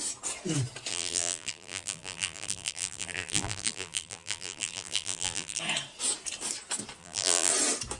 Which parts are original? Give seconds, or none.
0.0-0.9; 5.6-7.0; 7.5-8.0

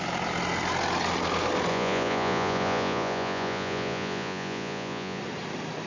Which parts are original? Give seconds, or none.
0.0-1.7; 5.2-5.9